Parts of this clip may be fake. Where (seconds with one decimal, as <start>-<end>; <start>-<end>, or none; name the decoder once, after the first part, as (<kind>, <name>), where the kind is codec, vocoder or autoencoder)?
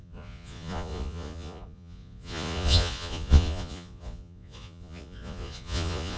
0.0-6.2 (vocoder, Vocos)